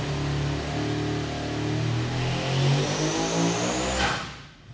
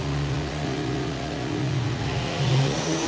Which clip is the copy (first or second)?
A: second